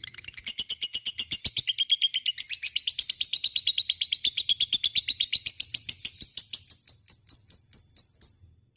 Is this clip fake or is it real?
real